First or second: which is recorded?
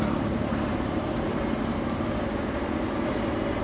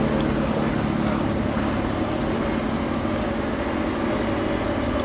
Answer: second